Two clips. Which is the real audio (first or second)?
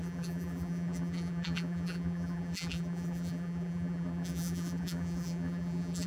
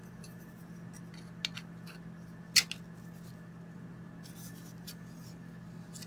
second